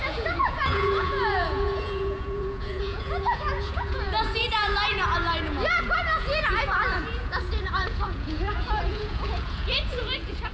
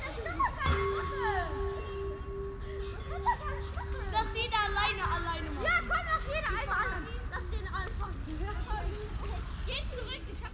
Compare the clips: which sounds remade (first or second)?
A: first